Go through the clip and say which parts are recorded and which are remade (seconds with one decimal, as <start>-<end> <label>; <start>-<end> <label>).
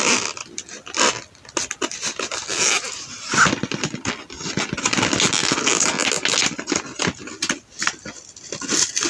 0.0-9.1 recorded